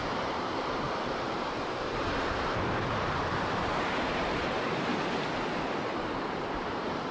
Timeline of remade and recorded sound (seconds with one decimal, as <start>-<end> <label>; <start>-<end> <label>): 0.0-4.9 remade; 4.9-6.0 recorded; 6.0-7.1 remade